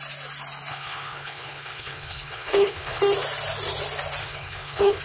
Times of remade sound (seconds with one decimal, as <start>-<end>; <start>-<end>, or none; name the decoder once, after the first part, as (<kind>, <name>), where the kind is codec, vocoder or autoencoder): 0.7-3.0 (codec, HILCodec); 4.2-5.0